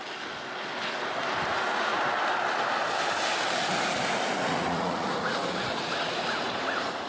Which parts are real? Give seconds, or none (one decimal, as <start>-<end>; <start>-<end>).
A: 0.0-1.5; 2.0-4.5